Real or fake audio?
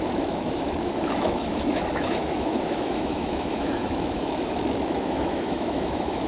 fake